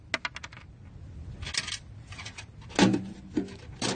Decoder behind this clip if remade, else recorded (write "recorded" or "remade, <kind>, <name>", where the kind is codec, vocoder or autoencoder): recorded